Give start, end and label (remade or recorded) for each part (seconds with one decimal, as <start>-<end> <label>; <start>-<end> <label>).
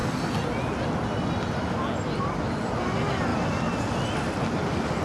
0.0-5.0 recorded